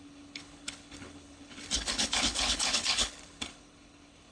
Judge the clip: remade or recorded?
remade